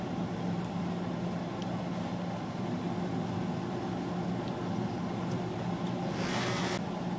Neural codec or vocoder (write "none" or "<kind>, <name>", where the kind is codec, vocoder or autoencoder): none